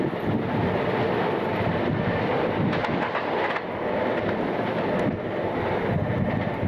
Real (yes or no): yes